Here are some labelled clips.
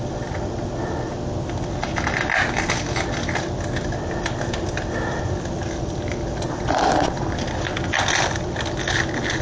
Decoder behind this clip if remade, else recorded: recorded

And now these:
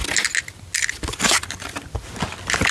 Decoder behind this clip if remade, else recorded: recorded